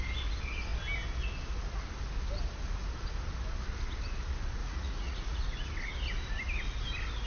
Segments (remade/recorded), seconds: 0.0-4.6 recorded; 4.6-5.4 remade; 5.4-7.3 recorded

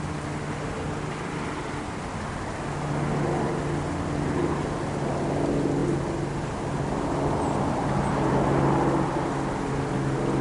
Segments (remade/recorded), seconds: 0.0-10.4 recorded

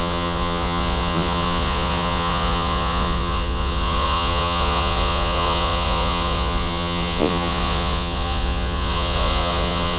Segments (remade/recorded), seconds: 0.0-10.0 remade

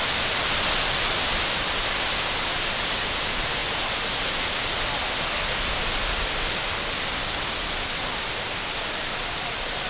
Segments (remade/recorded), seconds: 0.0-9.9 recorded